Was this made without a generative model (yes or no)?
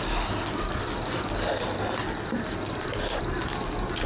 yes